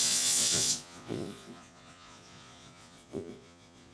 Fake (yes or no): yes